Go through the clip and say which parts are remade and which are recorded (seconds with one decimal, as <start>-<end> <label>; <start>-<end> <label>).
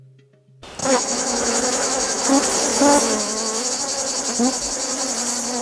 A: 0.0-0.8 recorded; 0.8-2.2 remade; 2.2-2.7 recorded; 2.7-3.7 remade; 3.7-5.6 recorded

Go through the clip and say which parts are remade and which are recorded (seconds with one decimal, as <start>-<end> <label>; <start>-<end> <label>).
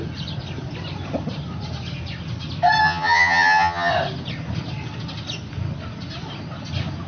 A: 0.0-2.8 recorded; 2.8-3.9 remade; 3.9-7.1 recorded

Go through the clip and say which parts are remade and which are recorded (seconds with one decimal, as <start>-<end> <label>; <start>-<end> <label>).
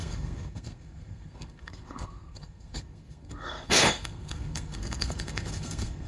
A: 0.0-6.1 remade